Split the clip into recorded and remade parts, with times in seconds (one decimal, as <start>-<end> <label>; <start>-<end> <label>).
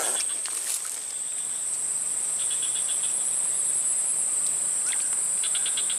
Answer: 0.0-1.3 recorded; 1.3-2.0 remade; 2.0-6.0 recorded